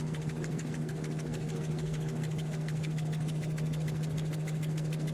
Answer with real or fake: fake